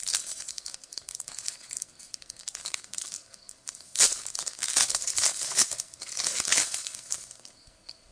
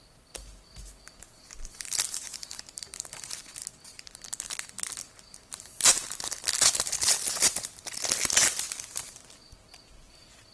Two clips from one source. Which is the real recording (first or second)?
second